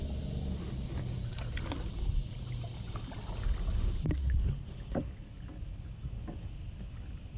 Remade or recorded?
recorded